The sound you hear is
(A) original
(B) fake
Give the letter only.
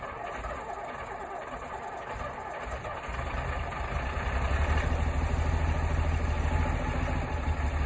A